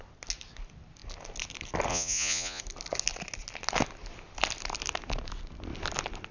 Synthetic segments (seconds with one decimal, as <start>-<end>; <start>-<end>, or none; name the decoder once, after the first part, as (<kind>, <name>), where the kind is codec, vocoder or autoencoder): 1.9-2.6 (vocoder, Vocos)